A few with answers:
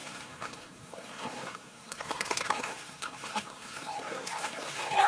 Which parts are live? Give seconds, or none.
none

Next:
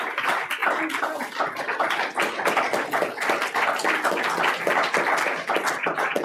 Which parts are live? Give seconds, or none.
0.0-6.2

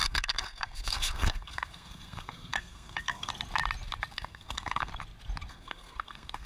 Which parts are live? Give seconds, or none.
3.3-4.1; 4.9-5.5